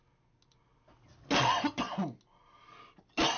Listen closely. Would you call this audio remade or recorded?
recorded